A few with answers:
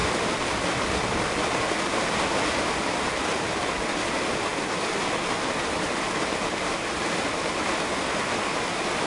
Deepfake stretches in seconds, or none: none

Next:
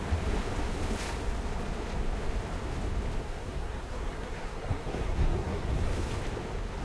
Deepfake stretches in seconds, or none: 3.2-5.9 (codec, SNAC)

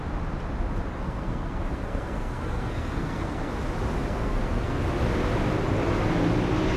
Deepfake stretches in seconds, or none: 0.9-3.5 (codec, SNAC); 4.0-4.8